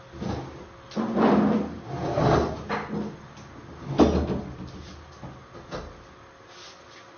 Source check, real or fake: real